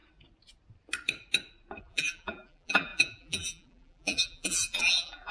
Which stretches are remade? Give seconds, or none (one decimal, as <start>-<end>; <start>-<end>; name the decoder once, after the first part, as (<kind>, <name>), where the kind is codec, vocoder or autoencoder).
1.8-5.3 (vocoder, BigVGAN v2)